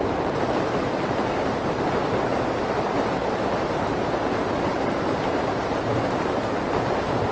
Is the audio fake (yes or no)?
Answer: yes